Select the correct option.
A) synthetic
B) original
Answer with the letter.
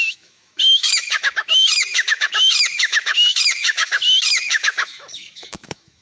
A